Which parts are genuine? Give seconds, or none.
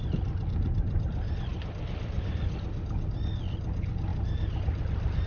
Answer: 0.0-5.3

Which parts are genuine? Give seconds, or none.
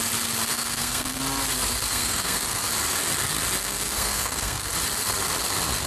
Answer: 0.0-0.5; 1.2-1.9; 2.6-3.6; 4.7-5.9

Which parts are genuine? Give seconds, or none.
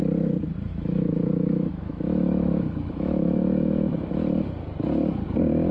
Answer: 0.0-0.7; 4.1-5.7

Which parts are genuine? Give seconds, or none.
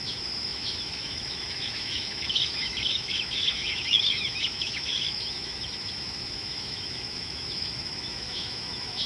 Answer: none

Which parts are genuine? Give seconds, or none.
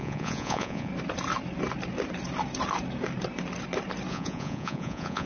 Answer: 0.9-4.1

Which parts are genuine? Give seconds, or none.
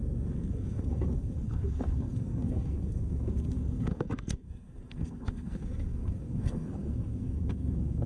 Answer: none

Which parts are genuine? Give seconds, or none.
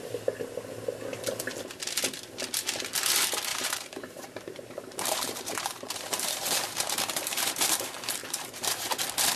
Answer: 0.0-3.5; 7.6-8.2; 8.9-9.4